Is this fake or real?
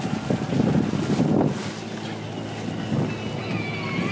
real